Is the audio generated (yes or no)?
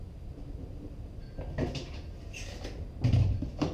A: no